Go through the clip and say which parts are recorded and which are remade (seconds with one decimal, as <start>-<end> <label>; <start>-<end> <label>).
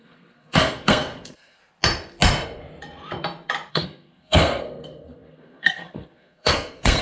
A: 0.0-1.6 remade; 1.6-3.7 recorded; 3.7-7.0 remade